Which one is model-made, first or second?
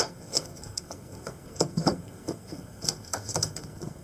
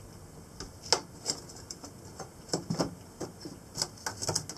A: first